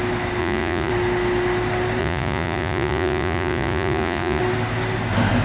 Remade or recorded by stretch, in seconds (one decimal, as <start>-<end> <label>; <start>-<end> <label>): 0.0-0.4 recorded; 0.4-0.9 remade; 0.9-2.0 recorded; 2.0-4.4 remade; 4.4-5.4 recorded

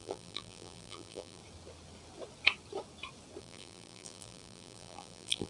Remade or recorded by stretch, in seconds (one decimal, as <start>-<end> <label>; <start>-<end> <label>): 0.0-1.4 remade; 1.4-3.4 recorded; 3.4-5.5 remade

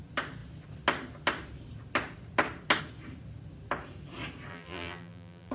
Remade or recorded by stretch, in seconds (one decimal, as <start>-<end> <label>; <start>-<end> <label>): 0.0-4.5 recorded; 4.5-5.5 remade

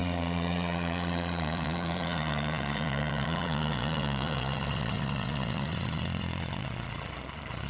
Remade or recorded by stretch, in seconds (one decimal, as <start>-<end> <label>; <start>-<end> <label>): 0.0-7.7 remade